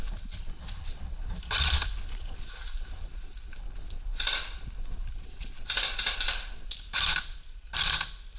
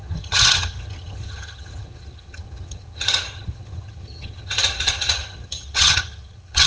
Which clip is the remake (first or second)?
second